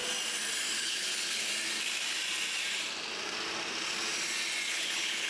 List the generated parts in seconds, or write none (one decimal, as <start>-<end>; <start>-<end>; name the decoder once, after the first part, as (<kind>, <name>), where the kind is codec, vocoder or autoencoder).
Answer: 0.8-1.5 (codec, HILCodec); 4.7-5.3